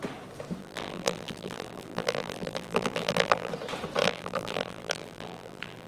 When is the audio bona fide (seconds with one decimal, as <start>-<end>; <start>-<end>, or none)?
0.0-0.6; 3.5-4.0